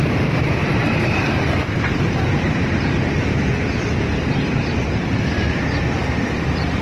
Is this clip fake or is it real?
fake